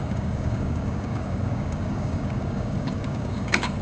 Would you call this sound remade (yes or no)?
yes